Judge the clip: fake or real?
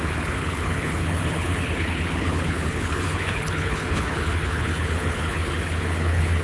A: fake